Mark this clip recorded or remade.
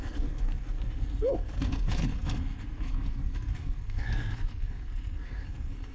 remade